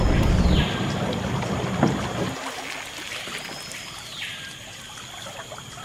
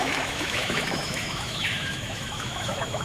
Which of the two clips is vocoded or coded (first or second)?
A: second